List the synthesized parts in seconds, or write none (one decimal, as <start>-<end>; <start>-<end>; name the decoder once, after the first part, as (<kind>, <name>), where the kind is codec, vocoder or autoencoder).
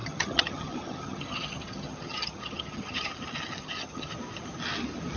0.0-3.1 (vocoder, HiFi-GAN); 3.6-4.1